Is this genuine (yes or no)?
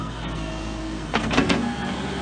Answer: no